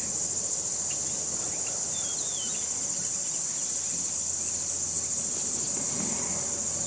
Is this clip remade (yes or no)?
no